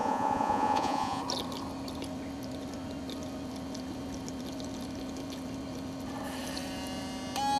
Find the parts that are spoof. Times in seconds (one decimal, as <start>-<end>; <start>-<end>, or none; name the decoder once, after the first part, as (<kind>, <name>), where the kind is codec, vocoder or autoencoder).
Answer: 0.0-1.2 (vocoder, Vocos)